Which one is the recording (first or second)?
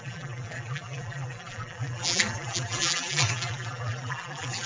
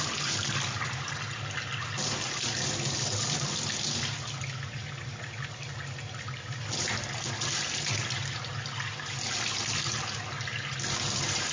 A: second